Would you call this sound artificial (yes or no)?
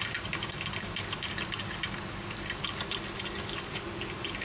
no